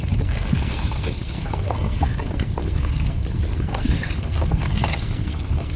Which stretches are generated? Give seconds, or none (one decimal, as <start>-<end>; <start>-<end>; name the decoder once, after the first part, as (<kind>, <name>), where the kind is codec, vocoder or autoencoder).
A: 0.0-5.8 (codec, SNAC)